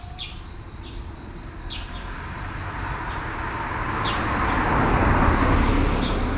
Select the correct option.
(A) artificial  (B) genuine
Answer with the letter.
B